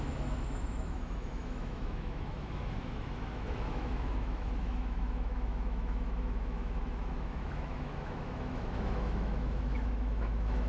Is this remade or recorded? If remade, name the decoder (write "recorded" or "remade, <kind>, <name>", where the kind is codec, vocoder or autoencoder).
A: remade, autoencoder, DAC-VAE